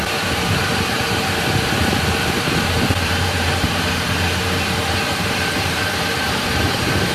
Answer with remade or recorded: remade